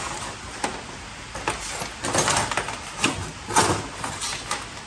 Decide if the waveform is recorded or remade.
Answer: recorded